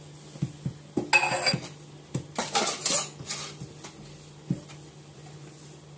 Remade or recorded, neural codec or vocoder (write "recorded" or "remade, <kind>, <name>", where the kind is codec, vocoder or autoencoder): recorded